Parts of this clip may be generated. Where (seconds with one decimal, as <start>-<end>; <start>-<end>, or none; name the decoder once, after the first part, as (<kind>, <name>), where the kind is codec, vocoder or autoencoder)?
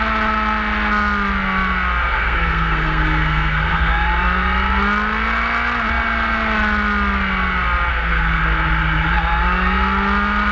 2.0-3.9 (codec, SNAC); 7.9-8.4